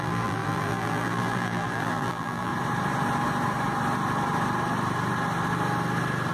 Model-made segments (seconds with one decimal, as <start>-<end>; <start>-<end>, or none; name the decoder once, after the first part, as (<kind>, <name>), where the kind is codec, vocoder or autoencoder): 0.0-2.5 (vocoder, BigVGAN v2)